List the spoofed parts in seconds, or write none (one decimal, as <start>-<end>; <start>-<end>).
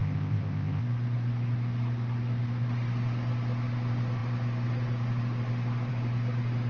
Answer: 0.0-0.8